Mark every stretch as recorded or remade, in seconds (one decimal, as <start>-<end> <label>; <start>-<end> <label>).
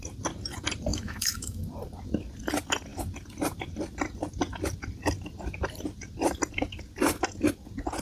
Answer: 0.0-0.9 recorded; 0.9-1.6 remade; 1.6-8.0 recorded